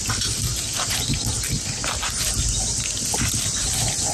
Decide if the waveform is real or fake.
real